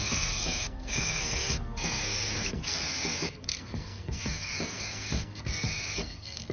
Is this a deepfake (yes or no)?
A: yes